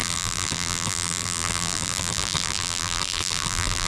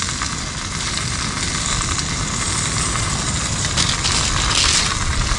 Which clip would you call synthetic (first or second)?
first